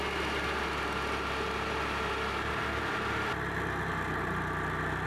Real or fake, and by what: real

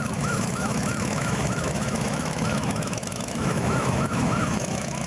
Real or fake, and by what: fake, autoencoder, DAC-VAE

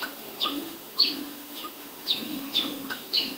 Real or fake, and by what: fake, autoencoder, DAC-VAE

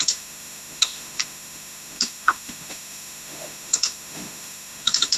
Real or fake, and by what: fake, autoencoder, DAC-VAE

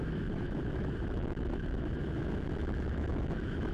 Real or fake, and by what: fake, autoencoder, DAC-VAE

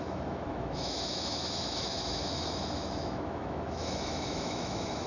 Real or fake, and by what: fake, autoencoder, DAC-VAE